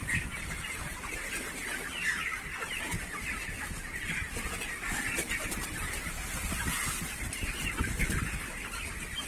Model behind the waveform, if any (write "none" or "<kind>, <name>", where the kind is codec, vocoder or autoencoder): none